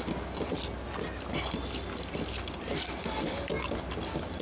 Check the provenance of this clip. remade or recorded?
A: recorded